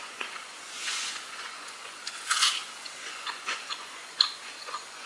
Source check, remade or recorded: remade